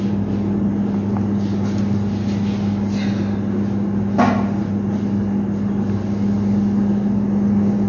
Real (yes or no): yes